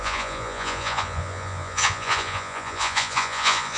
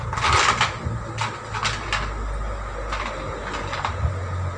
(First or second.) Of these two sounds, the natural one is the second